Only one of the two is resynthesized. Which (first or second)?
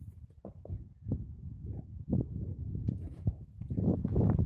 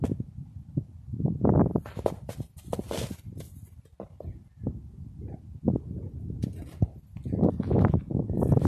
first